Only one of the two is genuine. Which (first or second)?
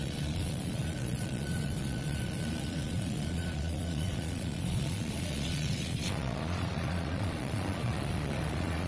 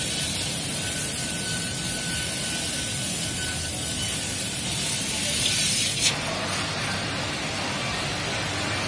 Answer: second